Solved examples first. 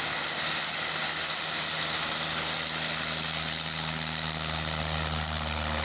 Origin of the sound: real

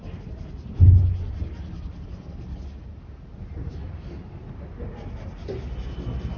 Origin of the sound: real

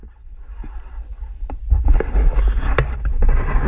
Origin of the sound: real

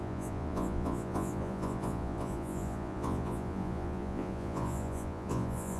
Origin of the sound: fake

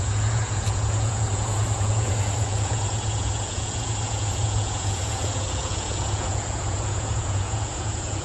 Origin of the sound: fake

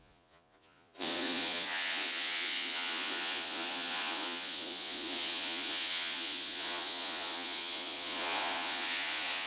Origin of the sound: fake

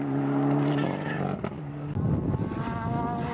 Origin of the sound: real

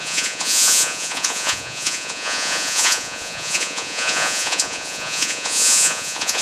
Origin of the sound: fake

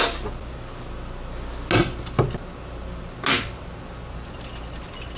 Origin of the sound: real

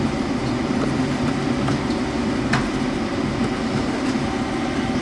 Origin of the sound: real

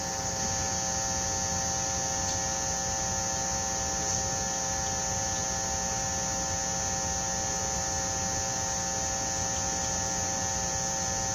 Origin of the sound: real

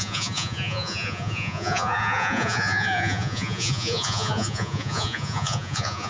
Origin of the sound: fake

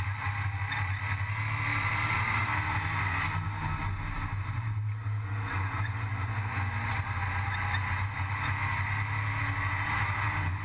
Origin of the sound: real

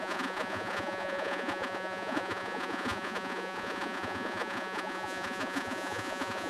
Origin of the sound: fake